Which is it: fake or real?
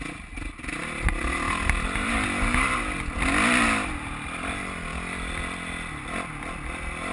real